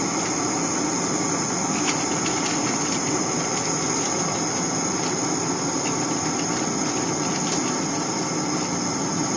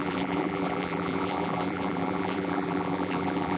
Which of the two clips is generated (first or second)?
second